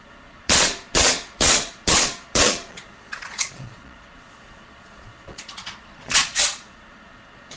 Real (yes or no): no